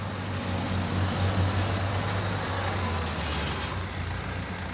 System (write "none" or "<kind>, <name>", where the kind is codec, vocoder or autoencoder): none